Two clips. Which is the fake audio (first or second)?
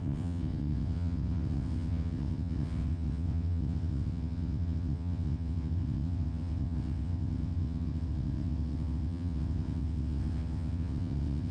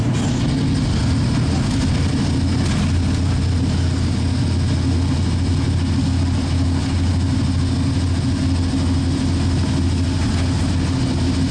first